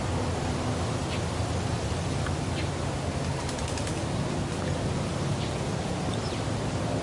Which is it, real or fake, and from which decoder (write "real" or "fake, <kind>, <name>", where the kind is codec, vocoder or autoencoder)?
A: real